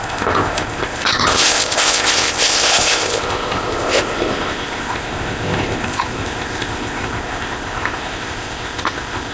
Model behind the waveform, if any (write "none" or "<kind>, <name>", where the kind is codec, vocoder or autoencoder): codec, ZipCodec